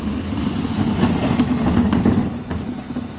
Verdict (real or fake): real